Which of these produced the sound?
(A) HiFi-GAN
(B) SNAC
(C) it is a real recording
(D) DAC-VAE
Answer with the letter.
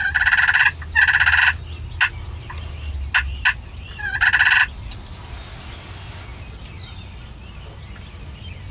C